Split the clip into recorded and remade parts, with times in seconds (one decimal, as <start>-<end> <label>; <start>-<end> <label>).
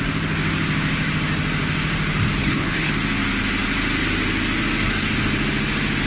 0.0-2.4 recorded; 2.4-2.9 remade; 2.9-6.1 recorded